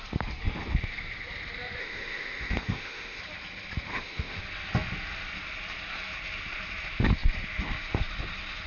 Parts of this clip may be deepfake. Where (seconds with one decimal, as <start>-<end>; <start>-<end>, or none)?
1.8-3.2; 3.9-4.4